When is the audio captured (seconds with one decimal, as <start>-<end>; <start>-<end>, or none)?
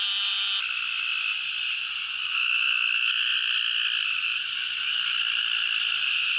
0.0-3.3; 5.4-6.4